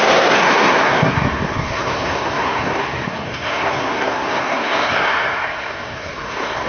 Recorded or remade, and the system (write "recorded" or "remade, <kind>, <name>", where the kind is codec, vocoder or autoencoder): remade, codec, SNAC